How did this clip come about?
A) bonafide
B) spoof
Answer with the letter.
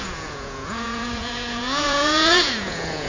B